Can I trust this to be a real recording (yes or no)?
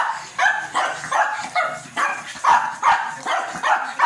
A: yes